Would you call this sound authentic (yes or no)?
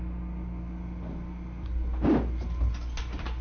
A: yes